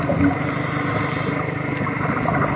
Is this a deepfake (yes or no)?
no